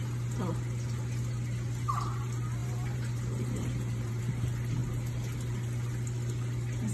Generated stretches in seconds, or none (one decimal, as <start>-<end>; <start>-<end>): 2.6-4.2